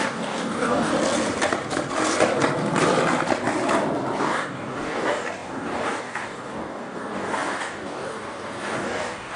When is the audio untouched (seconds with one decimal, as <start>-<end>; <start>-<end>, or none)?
0.9-4.2